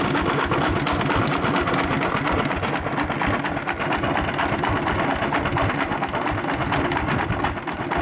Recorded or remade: recorded